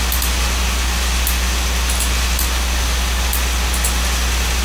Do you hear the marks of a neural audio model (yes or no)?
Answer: no